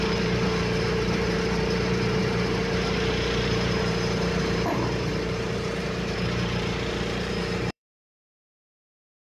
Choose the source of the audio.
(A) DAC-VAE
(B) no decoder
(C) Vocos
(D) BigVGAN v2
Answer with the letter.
D